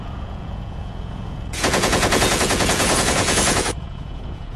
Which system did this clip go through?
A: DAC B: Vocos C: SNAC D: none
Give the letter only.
B